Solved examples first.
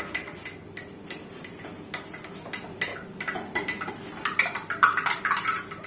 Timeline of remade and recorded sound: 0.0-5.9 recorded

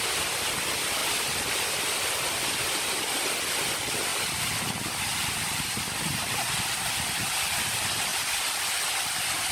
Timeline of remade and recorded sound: 0.0-9.5 recorded

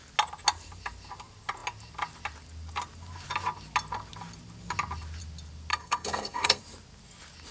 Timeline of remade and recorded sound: 0.0-5.7 recorded; 5.7-6.6 remade; 6.6-7.5 recorded

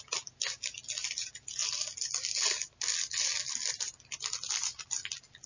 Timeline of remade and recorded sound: 0.0-5.5 recorded

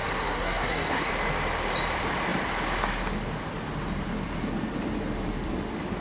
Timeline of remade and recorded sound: 0.0-1.1 remade; 1.1-6.0 recorded

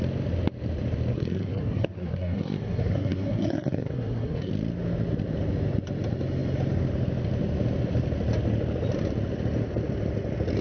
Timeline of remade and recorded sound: 0.0-1.1 recorded; 1.1-4.5 remade; 4.5-10.6 recorded

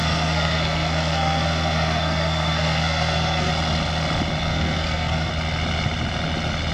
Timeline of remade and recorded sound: 0.0-3.5 remade; 3.5-4.5 recorded; 4.5-5.3 remade; 5.3-6.7 recorded

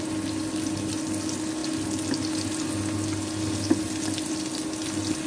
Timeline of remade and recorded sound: 0.0-5.3 recorded